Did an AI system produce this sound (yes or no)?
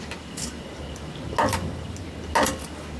no